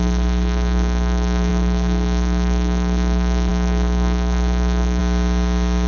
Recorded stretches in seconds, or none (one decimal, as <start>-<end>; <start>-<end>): 5.0-5.9